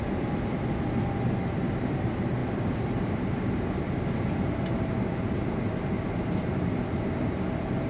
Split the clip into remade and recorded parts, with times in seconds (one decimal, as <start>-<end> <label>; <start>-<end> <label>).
0.0-2.4 recorded; 2.4-3.8 remade; 3.8-7.9 recorded